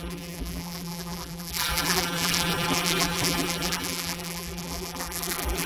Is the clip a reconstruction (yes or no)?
yes